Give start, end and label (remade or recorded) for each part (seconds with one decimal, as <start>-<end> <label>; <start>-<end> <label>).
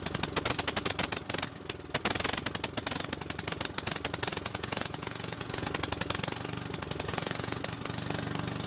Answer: 0.0-4.3 recorded; 4.3-5.7 remade; 5.7-7.1 recorded; 7.1-7.6 remade; 7.6-8.7 recorded